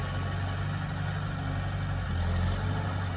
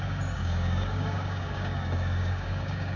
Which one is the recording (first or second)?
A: first